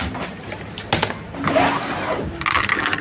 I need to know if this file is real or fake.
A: real